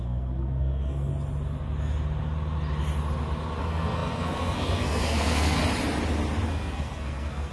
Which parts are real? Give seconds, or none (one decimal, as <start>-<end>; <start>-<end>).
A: 1.1-3.6; 5.6-6.5